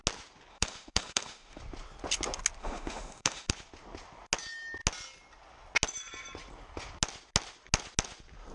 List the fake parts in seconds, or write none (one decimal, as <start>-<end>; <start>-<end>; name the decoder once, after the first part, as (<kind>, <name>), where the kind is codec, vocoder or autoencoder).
0.5-1.6 (autoencoder, DAC-VAE); 2.6-3.5